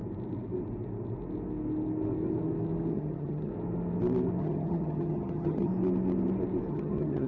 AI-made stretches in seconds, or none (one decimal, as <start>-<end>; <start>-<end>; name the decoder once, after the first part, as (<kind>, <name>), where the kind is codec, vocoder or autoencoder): 2.9-3.5 (vocoder, HiFi-GAN); 4.4-5.7; 6.7-7.3